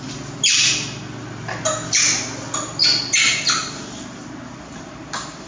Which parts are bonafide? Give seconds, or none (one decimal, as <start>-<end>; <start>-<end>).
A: 0.0-5.5